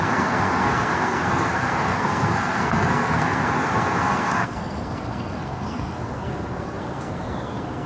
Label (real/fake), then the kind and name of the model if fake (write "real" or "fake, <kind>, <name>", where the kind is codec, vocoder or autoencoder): fake, codec, SNAC